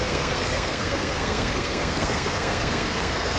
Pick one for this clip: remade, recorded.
remade